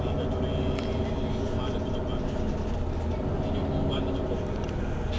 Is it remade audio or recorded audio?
recorded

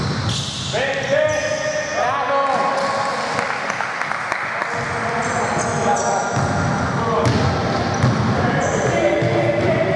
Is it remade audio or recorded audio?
recorded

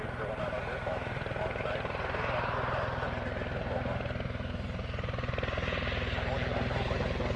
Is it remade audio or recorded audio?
recorded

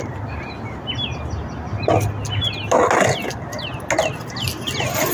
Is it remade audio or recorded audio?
recorded